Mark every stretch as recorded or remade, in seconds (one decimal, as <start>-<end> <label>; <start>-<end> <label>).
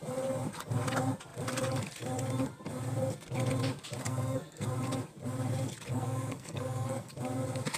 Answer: 0.0-4.0 recorded; 4.0-4.7 remade; 4.7-5.9 recorded; 5.9-7.1 remade; 7.1-7.8 recorded